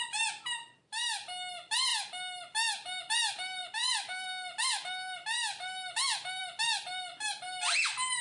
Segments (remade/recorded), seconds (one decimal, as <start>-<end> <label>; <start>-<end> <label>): 0.0-8.2 recorded